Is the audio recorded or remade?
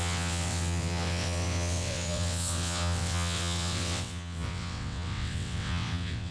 remade